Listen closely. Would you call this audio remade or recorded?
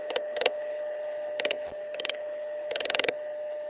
remade